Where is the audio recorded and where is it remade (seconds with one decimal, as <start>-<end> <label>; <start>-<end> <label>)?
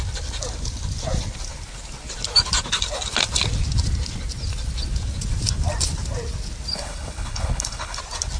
0.0-6.7 recorded; 6.7-8.0 remade; 8.0-8.4 recorded